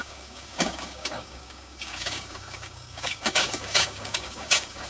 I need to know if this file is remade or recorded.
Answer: remade